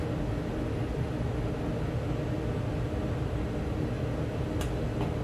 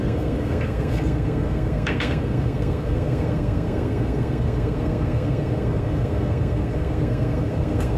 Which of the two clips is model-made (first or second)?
second